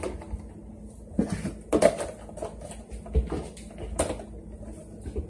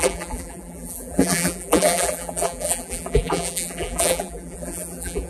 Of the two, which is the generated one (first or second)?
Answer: second